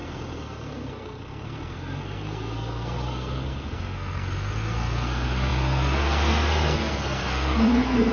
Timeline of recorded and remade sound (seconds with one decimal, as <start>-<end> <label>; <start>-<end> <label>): 0.0-8.1 remade